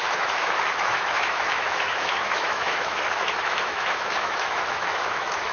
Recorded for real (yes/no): no